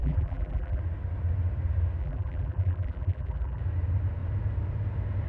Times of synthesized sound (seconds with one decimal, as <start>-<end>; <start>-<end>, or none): 0.0-0.8; 2.0-3.6